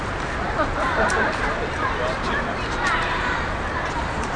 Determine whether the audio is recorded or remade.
recorded